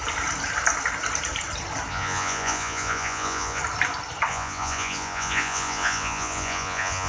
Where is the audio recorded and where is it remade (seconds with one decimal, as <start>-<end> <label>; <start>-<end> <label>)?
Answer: 0.0-1.9 recorded; 1.9-3.6 remade; 3.6-4.3 recorded; 4.3-7.1 remade